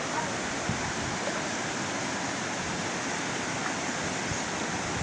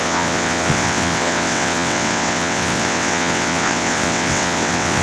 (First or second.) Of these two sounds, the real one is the first